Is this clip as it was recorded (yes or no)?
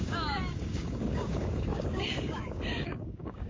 no